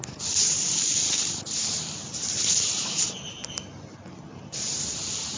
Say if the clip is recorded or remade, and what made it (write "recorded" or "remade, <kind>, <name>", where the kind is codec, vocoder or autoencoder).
recorded